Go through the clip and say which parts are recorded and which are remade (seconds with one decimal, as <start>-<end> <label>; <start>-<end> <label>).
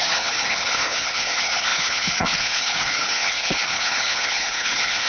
0.0-5.1 remade